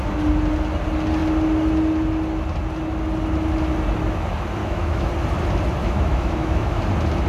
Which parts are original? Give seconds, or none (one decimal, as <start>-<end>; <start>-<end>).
0.0-4.6; 5.1-5.8; 6.8-7.3